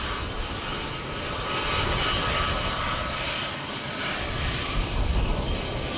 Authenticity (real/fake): real